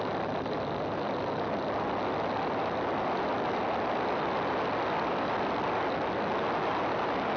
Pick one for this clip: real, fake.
real